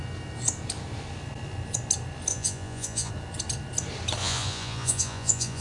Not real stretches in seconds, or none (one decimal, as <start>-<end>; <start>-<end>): 2.3-3.1; 4.2-5.6